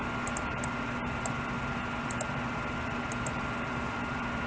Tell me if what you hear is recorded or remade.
recorded